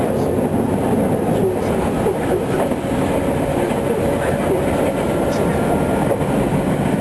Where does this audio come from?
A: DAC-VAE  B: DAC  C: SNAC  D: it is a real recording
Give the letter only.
D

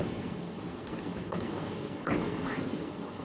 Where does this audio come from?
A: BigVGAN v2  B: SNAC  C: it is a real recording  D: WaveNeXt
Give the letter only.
B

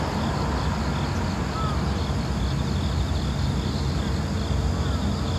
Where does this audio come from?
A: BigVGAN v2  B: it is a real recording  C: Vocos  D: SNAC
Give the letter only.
B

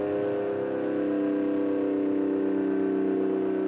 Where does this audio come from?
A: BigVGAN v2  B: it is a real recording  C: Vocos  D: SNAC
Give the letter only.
B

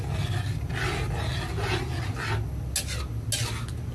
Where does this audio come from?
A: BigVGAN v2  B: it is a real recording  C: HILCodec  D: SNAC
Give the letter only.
B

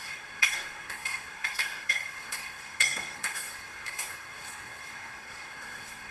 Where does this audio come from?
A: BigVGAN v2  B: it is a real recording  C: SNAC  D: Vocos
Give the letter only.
C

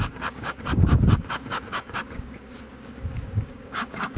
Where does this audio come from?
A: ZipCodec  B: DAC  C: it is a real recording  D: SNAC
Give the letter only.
B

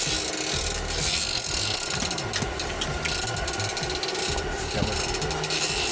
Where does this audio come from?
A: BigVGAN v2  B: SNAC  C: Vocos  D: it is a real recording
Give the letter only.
D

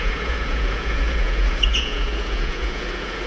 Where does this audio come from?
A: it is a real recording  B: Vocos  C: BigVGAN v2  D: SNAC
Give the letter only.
B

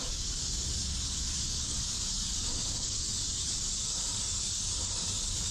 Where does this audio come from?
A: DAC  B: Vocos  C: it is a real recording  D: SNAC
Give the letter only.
A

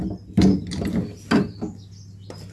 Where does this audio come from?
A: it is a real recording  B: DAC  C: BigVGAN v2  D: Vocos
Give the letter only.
A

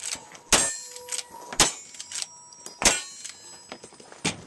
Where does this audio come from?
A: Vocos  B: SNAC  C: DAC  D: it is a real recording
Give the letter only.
D